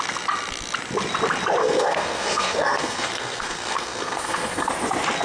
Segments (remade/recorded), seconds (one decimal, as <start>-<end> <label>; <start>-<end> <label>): 0.0-1.6 recorded; 1.6-4.7 remade; 4.7-5.2 recorded